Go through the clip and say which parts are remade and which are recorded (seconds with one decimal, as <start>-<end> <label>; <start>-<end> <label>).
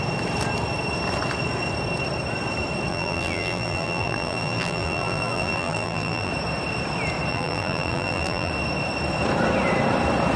0.0-2.9 recorded; 2.9-6.3 remade; 6.3-7.3 recorded; 7.3-8.5 remade; 8.5-10.4 recorded